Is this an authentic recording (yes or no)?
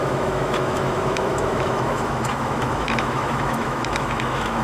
no